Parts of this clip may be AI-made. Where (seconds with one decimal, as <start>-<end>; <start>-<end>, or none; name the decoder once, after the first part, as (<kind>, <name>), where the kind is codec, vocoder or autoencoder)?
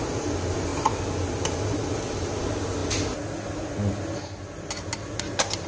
none